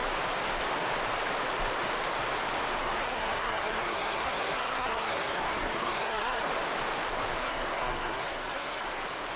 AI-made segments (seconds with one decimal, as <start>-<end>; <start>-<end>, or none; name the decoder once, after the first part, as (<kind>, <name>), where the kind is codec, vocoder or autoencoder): 2.8-6.4 (codec, SNAC); 7.3-8.9